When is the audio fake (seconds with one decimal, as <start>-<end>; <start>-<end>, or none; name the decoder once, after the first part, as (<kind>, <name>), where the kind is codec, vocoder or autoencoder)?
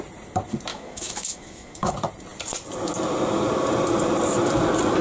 0.7-1.9 (autoencoder, DAC-VAE)